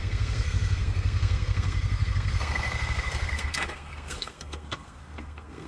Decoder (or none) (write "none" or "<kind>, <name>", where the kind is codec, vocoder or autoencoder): codec, SNAC